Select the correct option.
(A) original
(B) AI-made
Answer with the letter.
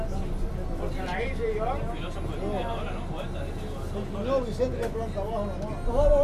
A